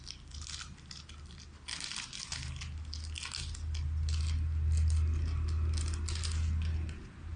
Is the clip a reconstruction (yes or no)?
no